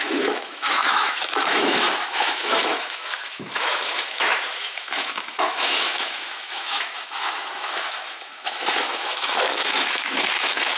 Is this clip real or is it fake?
fake